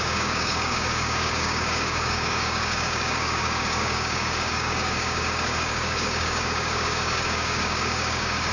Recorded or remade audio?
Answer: remade